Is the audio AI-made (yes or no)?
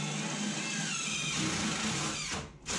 no